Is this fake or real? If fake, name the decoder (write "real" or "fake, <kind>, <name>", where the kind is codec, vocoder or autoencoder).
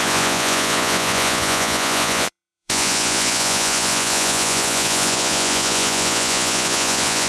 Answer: fake, vocoder, Vocos